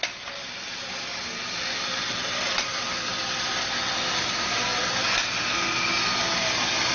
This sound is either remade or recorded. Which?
recorded